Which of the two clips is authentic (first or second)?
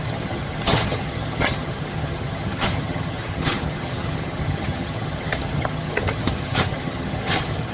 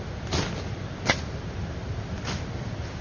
second